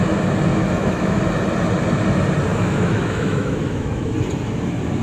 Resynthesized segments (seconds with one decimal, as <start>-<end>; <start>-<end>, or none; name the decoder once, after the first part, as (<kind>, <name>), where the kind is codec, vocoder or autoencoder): 0.5-1.2 (autoencoder, DAC-VAE); 2.5-4.1